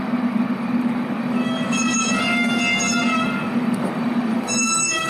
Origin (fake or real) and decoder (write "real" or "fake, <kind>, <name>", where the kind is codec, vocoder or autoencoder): fake, codec, DAC